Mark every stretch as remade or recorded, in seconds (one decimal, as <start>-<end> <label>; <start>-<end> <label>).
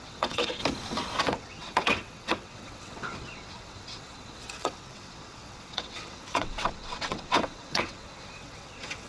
0.0-0.6 remade; 0.6-1.2 recorded; 1.2-9.1 remade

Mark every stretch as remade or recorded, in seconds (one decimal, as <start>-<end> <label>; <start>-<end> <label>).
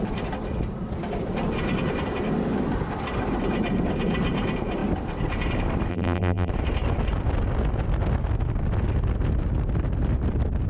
0.0-5.9 recorded; 5.9-6.5 remade; 6.5-10.7 recorded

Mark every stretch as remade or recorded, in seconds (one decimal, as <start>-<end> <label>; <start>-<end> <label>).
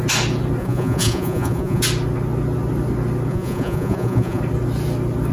0.0-0.6 recorded; 0.6-1.8 remade; 1.8-3.3 recorded; 3.3-4.4 remade; 4.4-5.3 recorded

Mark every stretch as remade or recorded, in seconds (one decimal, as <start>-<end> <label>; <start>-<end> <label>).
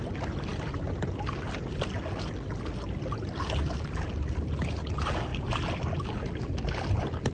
0.0-7.3 recorded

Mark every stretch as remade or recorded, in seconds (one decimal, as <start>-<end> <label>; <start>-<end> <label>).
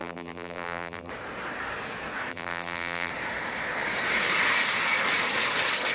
0.0-1.1 remade; 1.1-2.3 recorded; 2.3-3.1 remade; 3.1-5.9 recorded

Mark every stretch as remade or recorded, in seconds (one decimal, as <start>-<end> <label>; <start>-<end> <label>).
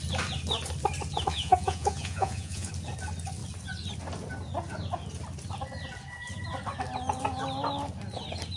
0.0-1.3 recorded; 1.3-2.7 remade; 2.7-8.6 recorded